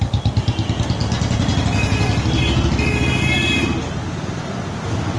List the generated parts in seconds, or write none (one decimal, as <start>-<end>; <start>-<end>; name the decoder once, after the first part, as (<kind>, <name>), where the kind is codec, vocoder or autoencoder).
none